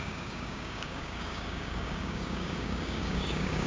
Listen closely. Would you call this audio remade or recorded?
remade